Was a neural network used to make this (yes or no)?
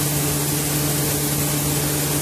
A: no